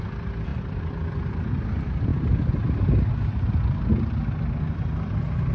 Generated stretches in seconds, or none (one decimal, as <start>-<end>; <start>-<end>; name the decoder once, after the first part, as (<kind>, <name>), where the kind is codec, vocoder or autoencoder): none